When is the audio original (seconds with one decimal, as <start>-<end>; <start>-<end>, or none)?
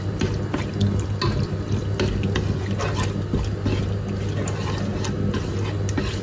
0.0-6.2